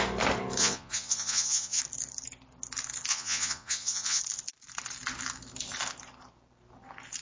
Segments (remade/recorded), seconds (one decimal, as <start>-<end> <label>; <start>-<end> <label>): 0.0-0.6 recorded; 0.6-1.8 remade; 1.8-3.1 recorded; 3.1-4.2 remade; 4.2-7.2 recorded